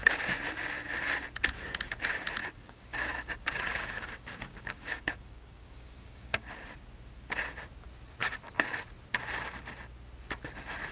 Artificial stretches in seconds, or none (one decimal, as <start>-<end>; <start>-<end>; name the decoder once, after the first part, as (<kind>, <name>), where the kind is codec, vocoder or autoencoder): 2.4-6.5 (codec, DAC)